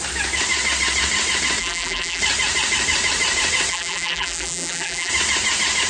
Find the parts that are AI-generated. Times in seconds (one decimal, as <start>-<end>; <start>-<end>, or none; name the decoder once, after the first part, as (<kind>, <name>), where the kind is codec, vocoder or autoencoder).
1.6-2.2 (vocoder, BigVGAN v2); 3.7-5.1